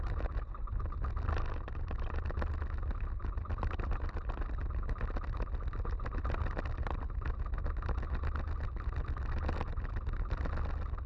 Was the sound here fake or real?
real